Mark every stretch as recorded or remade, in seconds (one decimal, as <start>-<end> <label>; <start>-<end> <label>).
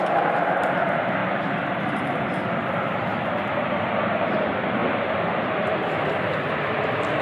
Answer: 0.0-1.2 recorded; 1.2-3.5 remade; 3.5-7.2 recorded